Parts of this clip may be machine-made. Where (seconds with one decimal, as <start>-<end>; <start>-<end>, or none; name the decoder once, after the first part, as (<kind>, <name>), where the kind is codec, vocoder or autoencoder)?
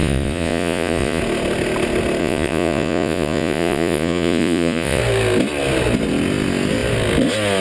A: 0.0-1.2 (vocoder, Vocos); 2.2-5.0